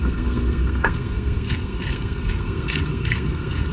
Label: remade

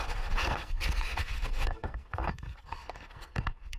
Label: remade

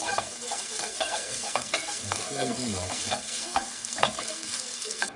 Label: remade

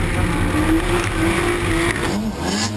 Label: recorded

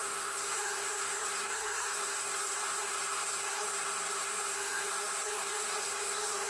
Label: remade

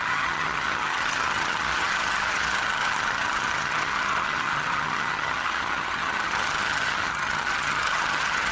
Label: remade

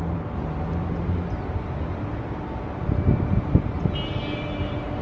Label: recorded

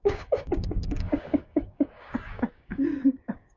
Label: remade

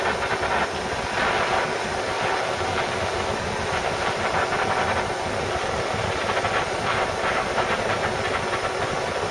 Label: recorded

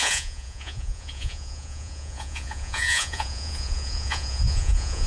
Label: remade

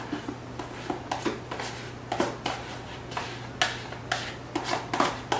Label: recorded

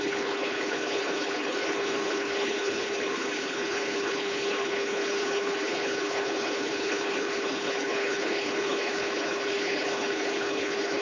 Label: remade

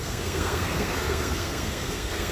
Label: remade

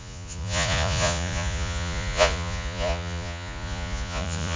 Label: remade